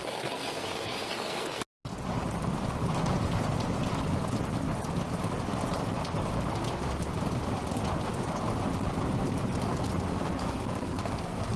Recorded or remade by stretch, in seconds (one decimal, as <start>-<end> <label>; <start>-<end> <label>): 0.0-1.6 remade; 1.6-10.1 recorded; 10.1-11.6 remade